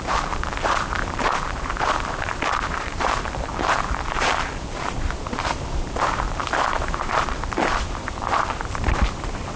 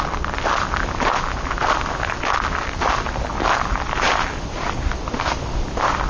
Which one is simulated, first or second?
first